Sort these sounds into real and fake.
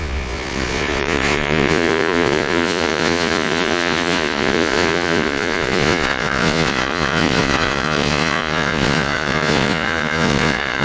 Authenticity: fake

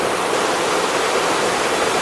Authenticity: real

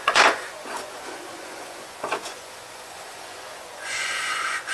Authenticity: fake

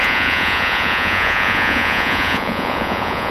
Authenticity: fake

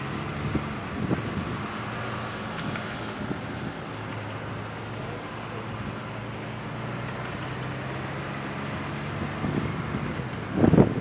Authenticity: real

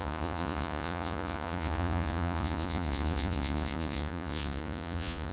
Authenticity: fake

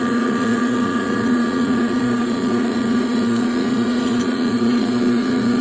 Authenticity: fake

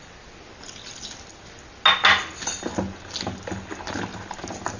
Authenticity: real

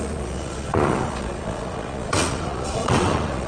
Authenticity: fake